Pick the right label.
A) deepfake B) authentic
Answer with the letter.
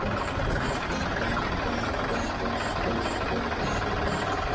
B